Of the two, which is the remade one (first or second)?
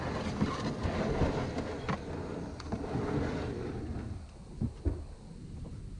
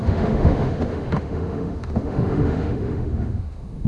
second